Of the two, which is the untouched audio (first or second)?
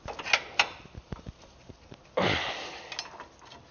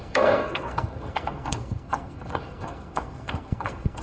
first